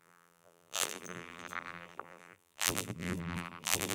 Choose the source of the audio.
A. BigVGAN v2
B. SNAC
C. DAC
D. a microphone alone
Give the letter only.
A